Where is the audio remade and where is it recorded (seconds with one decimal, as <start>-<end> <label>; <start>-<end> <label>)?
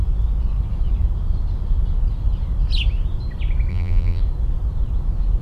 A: 0.0-3.7 recorded; 3.7-4.2 remade; 4.2-5.4 recorded